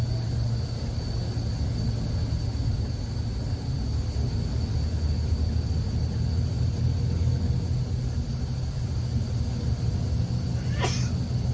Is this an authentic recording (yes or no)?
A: yes